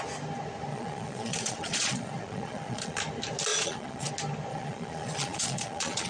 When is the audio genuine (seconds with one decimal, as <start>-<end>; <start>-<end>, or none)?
0.0-0.7; 3.0-3.5; 4.1-4.5